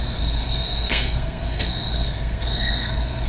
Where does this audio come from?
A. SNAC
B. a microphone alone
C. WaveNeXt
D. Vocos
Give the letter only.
A